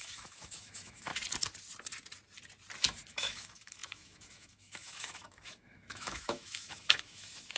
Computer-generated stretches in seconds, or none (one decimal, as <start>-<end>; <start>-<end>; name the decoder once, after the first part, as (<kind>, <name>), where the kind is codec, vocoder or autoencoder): 0.0-1.1 (autoencoder, DAC-VAE); 3.1-7.6

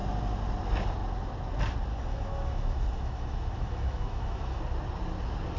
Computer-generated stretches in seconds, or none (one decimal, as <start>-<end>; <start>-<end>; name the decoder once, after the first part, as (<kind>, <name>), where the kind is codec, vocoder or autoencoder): 1.9-4.6 (autoencoder, DAC-VAE)

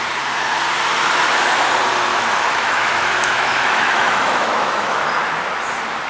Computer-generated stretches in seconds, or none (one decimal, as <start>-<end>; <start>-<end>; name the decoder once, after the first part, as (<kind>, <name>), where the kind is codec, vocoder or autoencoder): 2.1-5.1 (autoencoder, DAC-VAE)

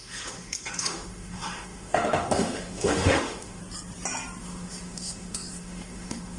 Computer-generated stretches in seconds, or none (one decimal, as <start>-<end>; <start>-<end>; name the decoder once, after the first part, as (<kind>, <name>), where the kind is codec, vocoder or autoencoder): 0.0-3.6 (autoencoder, DAC-VAE); 4.4-6.4

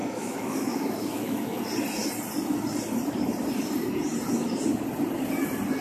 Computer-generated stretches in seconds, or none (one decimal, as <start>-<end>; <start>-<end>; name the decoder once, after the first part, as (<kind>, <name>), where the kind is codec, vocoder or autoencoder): 0.0-1.6 (autoencoder, DAC-VAE)

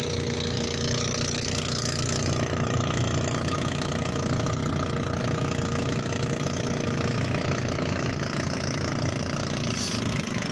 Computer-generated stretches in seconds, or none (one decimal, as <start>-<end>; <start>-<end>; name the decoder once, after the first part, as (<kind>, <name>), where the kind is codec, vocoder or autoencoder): 0.0-4.6 (autoencoder, DAC-VAE); 5.2-8.9; 10.1-10.5

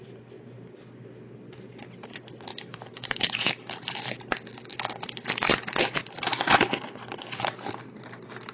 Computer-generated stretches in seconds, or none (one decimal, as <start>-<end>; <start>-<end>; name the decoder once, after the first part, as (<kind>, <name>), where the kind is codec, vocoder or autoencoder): 2.5-4.1 (autoencoder, DAC-VAE)